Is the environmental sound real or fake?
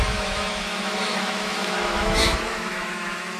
fake